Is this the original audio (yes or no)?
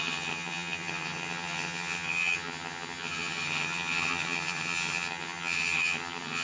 no